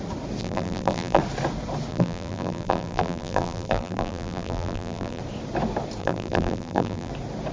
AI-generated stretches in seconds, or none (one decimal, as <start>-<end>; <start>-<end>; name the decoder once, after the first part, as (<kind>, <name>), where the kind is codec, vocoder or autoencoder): 0.4-1.2 (vocoder, BigVGAN v2); 1.9-5.2; 6.0-7.1